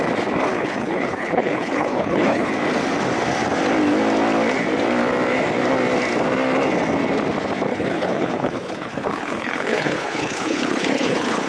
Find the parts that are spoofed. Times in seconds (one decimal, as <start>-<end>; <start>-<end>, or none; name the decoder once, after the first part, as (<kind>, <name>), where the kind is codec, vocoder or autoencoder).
0.5-2.5 (codec, HILCodec); 7.7-11.5